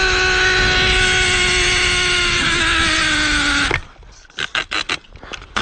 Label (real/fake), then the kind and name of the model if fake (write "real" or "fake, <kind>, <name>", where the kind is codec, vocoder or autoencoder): real